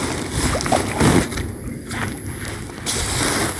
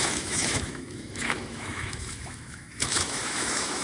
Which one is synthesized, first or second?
second